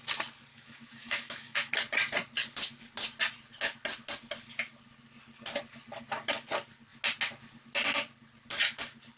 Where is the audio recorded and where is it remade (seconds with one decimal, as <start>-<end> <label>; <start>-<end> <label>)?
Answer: 0.0-0.5 recorded; 0.5-1.7 remade; 1.7-9.2 recorded